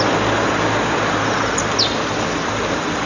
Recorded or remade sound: recorded